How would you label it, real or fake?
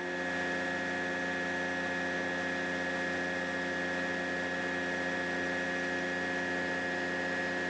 real